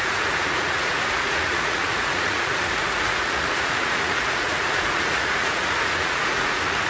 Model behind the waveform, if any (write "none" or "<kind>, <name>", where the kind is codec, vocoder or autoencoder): vocoder, Vocos